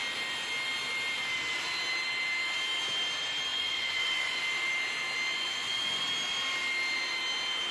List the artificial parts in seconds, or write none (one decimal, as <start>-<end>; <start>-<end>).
3.5-4.4; 5.3-6.0